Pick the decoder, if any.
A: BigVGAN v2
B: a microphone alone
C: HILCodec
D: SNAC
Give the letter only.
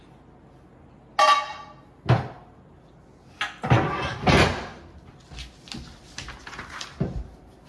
B